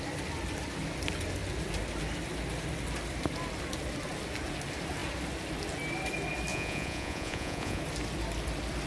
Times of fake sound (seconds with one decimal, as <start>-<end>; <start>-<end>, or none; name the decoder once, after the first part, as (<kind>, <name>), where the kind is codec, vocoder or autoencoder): 6.5-7.8 (vocoder, Vocos)

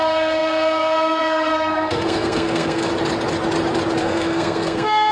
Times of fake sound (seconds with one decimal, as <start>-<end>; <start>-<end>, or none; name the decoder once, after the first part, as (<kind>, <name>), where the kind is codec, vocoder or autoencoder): 0.0-2.9 (codec, SNAC); 4.0-5.1

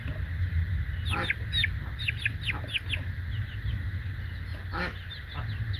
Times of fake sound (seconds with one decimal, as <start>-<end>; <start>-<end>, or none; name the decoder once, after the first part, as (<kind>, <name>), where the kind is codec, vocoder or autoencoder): none